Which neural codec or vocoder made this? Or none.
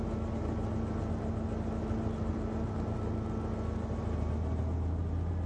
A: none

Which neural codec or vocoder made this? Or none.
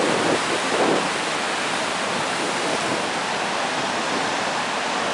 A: none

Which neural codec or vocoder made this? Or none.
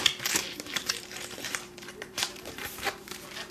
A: vocoder, BigVGAN v2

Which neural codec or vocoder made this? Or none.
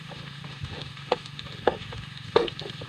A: autoencoder, DAC-VAE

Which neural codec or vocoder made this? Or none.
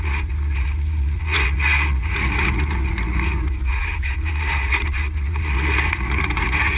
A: vocoder, Vocos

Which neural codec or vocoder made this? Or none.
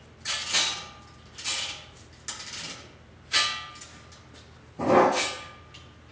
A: none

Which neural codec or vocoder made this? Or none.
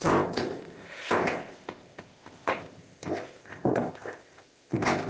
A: codec, ZipCodec